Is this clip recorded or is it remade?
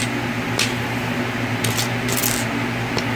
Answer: recorded